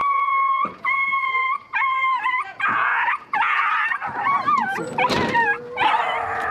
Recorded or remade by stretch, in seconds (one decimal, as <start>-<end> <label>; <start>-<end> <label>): 0.0-3.7 remade; 3.7-6.5 recorded